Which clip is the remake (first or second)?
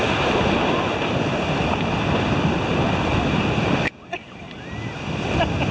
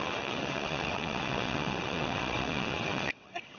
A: second